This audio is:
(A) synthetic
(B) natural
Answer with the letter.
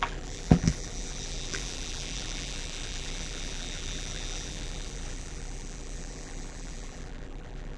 A